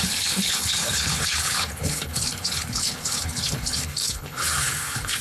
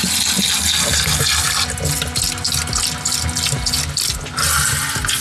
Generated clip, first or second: first